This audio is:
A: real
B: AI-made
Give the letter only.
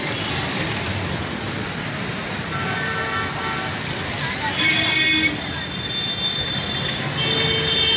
A